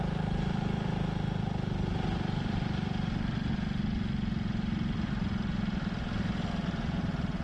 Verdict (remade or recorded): recorded